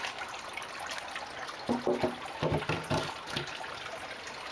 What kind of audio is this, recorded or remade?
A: recorded